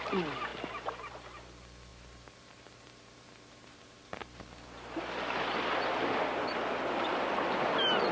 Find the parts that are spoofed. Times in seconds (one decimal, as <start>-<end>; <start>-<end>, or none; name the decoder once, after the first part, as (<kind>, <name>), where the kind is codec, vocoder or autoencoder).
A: 1.9-5.0 (vocoder, BigVGAN v2)